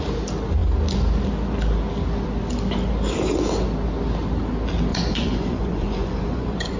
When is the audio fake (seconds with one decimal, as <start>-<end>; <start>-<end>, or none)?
4.9-6.8